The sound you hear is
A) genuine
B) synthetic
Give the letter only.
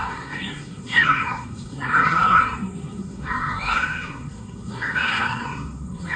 B